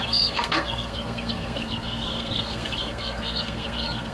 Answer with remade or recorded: remade